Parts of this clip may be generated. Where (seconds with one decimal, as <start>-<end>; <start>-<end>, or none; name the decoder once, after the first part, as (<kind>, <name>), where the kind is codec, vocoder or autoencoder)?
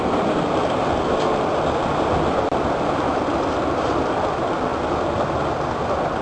none